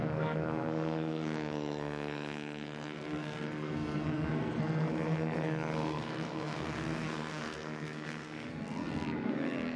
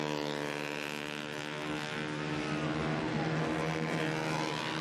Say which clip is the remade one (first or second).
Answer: first